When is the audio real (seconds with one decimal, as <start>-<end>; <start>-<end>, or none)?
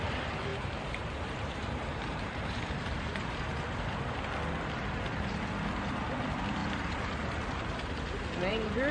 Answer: 0.0-0.5; 3.4-6.6; 8.2-8.9